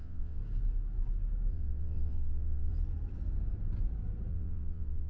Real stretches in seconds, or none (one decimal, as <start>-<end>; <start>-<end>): 0.4-1.5; 2.7-4.3